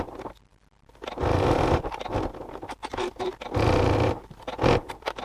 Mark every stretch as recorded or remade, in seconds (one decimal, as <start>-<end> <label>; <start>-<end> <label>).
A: 0.0-5.2 recorded